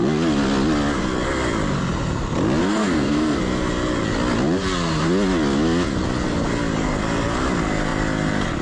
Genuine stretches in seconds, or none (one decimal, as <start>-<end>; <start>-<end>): 0.0-2.6; 3.4-8.6